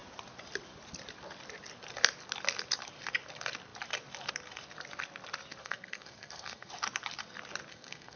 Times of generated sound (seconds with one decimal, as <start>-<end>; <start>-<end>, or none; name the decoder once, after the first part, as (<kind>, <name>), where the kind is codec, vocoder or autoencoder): 5.6-6.7 (codec, SNAC); 7.7-8.2